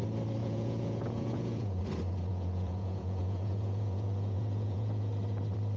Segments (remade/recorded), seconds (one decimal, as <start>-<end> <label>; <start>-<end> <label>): 0.0-0.4 recorded; 0.4-1.8 remade; 1.8-2.3 recorded; 2.3-5.1 remade; 5.1-5.8 recorded